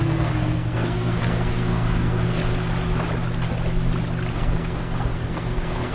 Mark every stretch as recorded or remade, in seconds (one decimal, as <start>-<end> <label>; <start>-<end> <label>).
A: 0.0-2.4 remade; 2.4-4.3 recorded; 4.3-5.9 remade